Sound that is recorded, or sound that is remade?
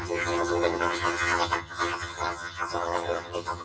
remade